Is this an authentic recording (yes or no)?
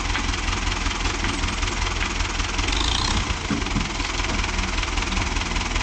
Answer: yes